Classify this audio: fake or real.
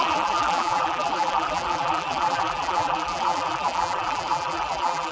fake